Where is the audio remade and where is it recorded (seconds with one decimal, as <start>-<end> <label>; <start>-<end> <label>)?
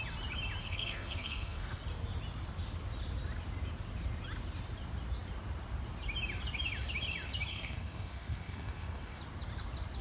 0.0-0.6 recorded; 0.6-1.8 remade; 1.8-7.5 recorded; 7.5-9.2 remade; 9.2-10.0 recorded